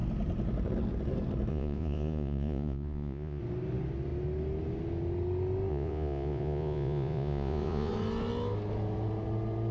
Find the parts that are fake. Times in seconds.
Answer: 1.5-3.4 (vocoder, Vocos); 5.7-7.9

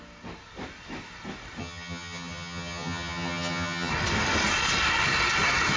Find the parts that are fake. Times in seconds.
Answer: 1.6-3.9 (vocoder, HiFi-GAN)

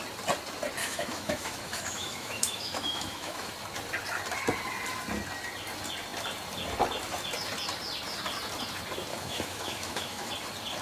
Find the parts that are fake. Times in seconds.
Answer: 0.8-3.5 (autoencoder, DAC-VAE); 9.1-10.3

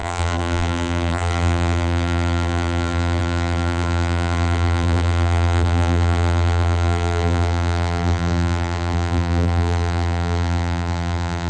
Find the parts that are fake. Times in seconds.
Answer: 0.0-11.5 (vocoder, BigVGAN v2)

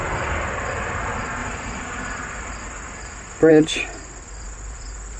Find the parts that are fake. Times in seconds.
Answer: none

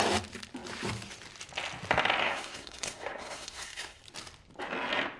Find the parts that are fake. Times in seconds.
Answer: 2.2-4.0 (codec, SNAC)

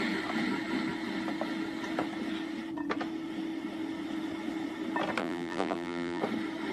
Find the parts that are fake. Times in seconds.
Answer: 5.2-6.2 (vocoder, BigVGAN v2)

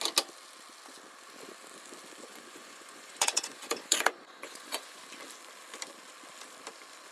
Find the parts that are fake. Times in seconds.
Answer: 2.3-5.0 (vocoder, Vocos)